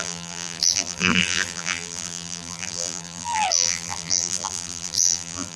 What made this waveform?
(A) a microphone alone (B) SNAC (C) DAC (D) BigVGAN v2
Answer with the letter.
D